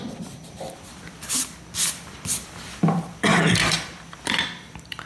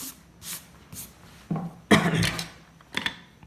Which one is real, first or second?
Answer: second